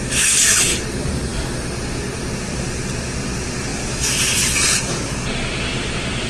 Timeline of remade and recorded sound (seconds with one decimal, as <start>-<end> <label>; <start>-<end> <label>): 0.0-3.7 recorded; 3.7-5.1 remade; 5.1-6.3 recorded